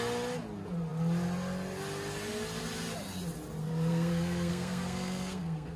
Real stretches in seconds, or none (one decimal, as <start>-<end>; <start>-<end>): 0.0-3.6